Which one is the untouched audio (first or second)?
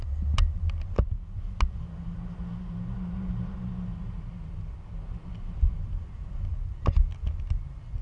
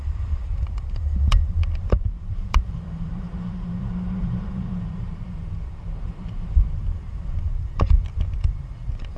first